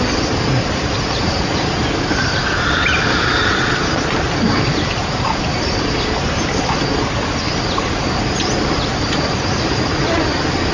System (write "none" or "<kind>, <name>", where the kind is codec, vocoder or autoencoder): none